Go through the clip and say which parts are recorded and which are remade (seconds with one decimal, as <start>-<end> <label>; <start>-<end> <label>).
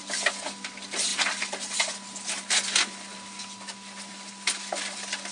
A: 0.0-5.3 recorded